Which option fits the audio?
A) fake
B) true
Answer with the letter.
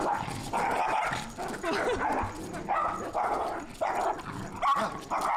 B